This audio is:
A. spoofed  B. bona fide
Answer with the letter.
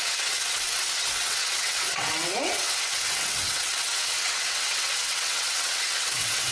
A